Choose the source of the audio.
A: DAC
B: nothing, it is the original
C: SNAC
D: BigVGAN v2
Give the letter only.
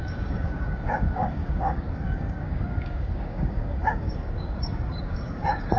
A